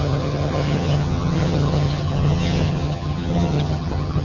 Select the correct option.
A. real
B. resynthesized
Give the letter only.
B